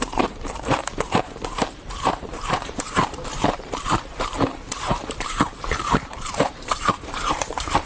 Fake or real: fake